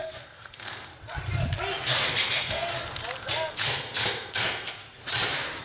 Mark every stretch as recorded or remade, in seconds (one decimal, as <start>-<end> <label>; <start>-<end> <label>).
0.0-0.9 remade; 0.9-2.2 recorded; 2.2-2.7 remade; 2.7-3.5 recorded; 3.5-4.8 remade; 4.8-5.6 recorded